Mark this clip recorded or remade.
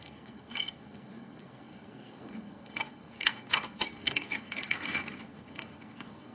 remade